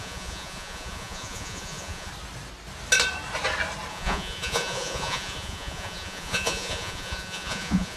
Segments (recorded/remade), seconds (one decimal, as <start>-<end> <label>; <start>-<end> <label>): 0.0-2.1 remade; 2.1-3.9 recorded; 3.9-8.0 remade